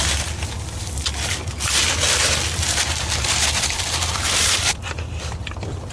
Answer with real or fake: real